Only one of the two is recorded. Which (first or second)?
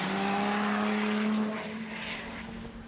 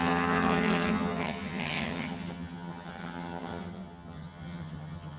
first